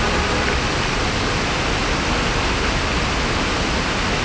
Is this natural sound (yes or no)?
yes